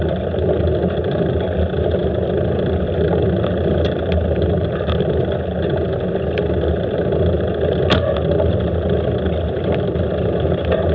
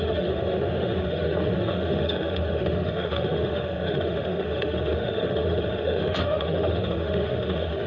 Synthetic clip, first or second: second